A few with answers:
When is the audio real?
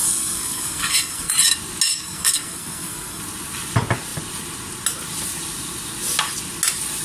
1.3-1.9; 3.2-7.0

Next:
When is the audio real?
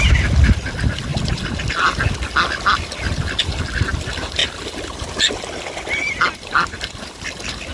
0.0-7.7